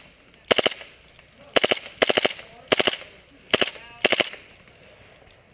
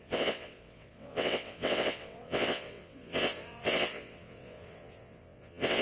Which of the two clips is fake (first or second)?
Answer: second